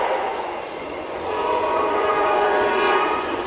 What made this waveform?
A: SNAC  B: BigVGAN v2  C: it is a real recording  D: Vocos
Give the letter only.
D